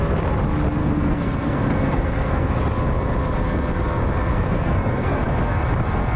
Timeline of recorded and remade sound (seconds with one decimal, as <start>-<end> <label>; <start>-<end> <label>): 0.0-0.8 recorded; 0.8-2.6 remade; 2.6-4.3 recorded; 4.3-5.2 remade; 5.2-6.2 recorded